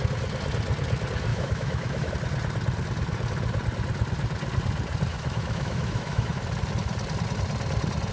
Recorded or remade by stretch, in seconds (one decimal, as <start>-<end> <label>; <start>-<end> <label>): 0.0-1.3 recorded; 1.3-2.1 remade; 2.1-5.1 recorded; 5.1-6.4 remade; 6.4-8.1 recorded